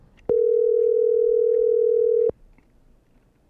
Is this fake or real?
fake